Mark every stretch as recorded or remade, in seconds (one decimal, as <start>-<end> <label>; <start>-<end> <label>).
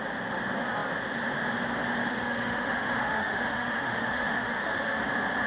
0.0-2.1 recorded; 2.1-5.0 remade; 5.0-5.5 recorded